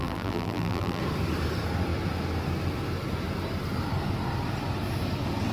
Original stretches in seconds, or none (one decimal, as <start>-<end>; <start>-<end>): 1.0-5.5